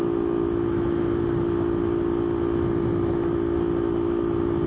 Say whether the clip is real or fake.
real